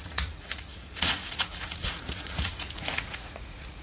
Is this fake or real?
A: fake